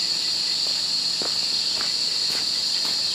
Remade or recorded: recorded